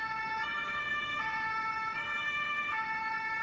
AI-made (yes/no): yes